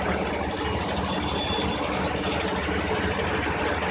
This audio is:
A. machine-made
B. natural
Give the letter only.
B